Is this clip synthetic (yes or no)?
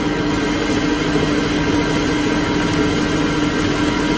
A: no